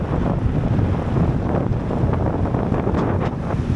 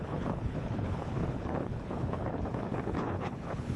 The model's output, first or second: second